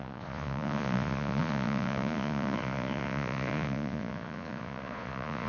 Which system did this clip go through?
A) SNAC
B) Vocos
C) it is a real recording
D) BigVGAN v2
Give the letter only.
B